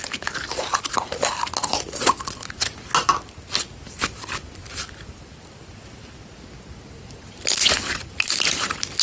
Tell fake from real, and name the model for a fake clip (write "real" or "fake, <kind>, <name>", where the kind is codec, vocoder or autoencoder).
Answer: real